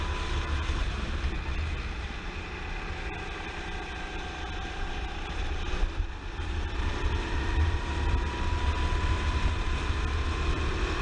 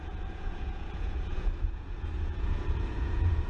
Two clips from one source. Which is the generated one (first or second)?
second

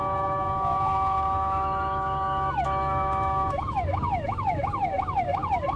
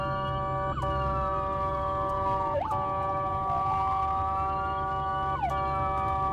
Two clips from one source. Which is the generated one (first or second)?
first